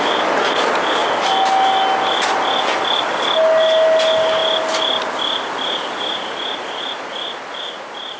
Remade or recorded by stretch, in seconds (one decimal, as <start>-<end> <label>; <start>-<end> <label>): 0.0-8.2 recorded